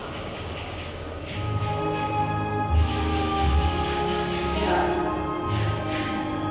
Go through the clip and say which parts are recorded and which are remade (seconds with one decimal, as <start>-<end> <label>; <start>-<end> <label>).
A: 0.0-1.6 remade; 1.6-2.9 recorded; 2.9-4.7 remade; 4.7-6.5 recorded

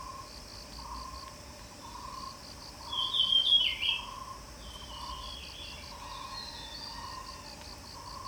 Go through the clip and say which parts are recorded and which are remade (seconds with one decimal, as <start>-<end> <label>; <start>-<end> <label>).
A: 0.0-8.3 recorded

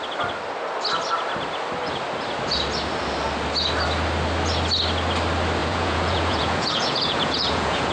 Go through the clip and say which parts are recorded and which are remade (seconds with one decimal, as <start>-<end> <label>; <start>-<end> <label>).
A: 0.0-5.6 recorded; 5.6-7.9 remade

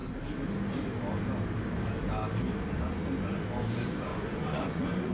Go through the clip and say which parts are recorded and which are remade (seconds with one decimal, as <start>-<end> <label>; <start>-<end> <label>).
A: 0.0-4.1 recorded; 4.1-5.1 remade